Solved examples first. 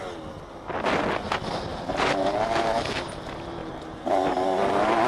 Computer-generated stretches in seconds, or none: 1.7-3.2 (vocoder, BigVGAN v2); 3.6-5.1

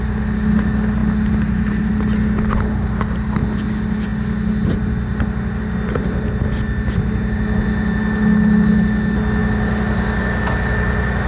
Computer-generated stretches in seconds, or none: none